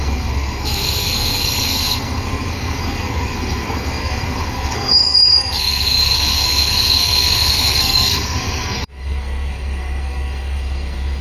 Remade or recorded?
remade